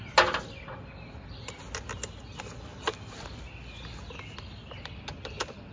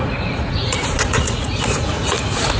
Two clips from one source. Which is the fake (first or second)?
second